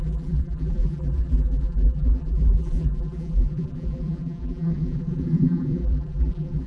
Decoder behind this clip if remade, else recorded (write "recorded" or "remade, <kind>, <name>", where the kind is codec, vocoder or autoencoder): remade, vocoder, BigVGAN v2